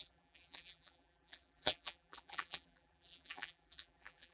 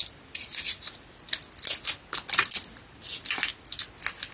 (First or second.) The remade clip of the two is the first